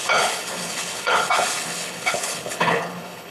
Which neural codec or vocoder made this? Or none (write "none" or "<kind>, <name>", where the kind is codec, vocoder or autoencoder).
codec, HILCodec